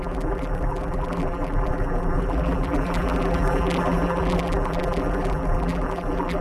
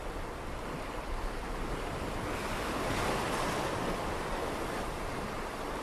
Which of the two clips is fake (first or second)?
first